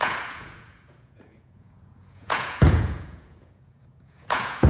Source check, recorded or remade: remade